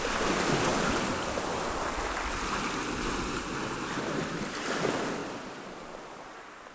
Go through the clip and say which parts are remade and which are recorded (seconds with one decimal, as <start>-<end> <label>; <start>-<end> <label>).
0.0-0.7 recorded; 0.7-4.7 remade; 4.7-5.2 recorded; 5.2-6.7 remade